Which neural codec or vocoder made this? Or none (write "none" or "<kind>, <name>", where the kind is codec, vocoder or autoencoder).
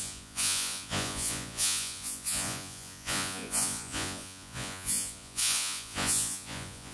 vocoder, Vocos